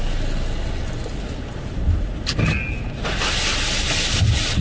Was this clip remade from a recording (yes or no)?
no